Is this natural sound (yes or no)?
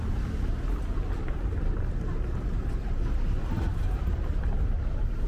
yes